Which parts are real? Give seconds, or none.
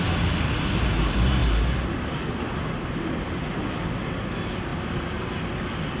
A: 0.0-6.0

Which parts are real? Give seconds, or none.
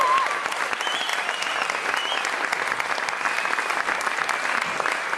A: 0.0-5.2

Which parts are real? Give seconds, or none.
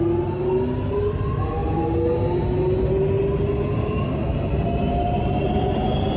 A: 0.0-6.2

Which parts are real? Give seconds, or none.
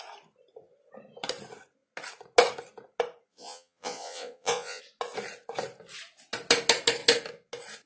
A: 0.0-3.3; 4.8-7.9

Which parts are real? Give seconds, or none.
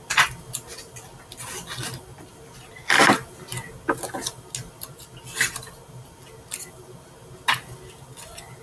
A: 0.0-2.3; 3.2-8.6